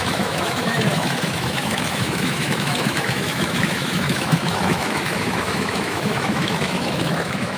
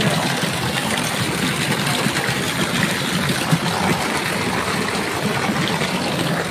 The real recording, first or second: second